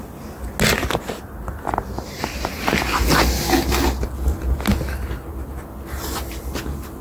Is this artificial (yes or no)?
no